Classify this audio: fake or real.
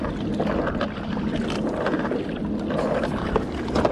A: real